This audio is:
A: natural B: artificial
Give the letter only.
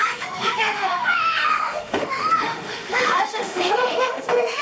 B